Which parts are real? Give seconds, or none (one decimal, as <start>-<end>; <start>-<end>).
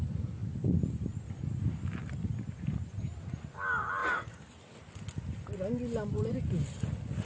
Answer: 0.0-7.3